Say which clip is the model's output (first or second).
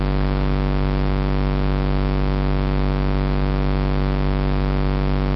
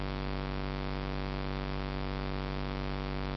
second